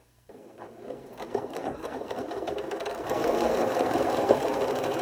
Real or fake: fake